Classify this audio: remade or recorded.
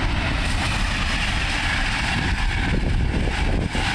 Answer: recorded